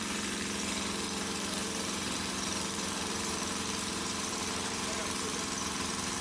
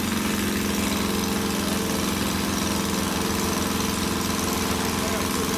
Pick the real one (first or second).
second